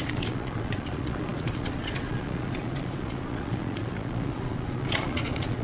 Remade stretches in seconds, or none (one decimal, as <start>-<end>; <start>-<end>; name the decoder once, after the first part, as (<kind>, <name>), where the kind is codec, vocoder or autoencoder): 0.0-5.6 (vocoder, Vocos)